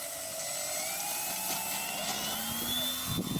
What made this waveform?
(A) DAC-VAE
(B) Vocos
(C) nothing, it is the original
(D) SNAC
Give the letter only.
C